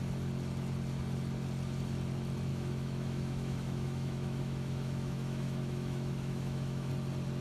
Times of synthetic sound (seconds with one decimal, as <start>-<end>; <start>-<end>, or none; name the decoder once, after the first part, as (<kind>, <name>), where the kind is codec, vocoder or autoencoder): 2.5-6.9 (autoencoder, DAC-VAE)